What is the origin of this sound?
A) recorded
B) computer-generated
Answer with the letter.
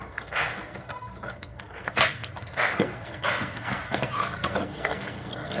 B